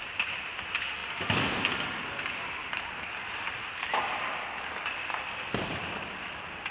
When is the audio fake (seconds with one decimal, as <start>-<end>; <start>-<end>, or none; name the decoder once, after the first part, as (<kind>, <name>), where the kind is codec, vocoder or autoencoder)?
none